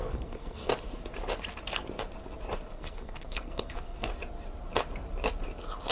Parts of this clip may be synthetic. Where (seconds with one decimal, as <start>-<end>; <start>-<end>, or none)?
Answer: 0.0-0.6; 2.7-4.1